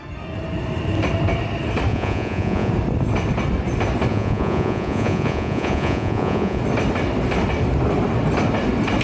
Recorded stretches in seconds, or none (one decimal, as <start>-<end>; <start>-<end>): 0.0-1.9; 2.7-4.1; 6.6-9.0